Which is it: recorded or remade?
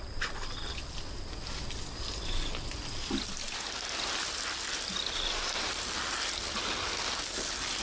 recorded